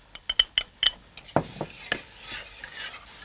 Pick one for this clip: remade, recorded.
recorded